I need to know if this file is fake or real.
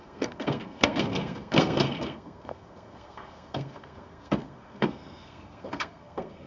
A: fake